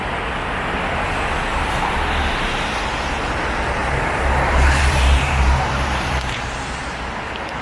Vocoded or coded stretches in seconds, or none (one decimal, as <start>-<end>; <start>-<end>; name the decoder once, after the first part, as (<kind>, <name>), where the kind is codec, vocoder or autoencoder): 1.5-2.7 (vocoder, BigVGAN v2); 3.8-6.8